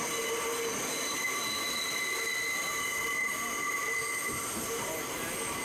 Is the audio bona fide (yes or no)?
yes